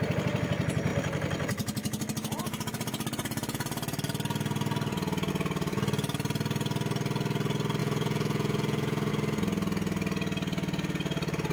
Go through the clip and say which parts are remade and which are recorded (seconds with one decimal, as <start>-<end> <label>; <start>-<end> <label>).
0.0-7.8 recorded; 7.8-9.1 remade; 9.1-11.5 recorded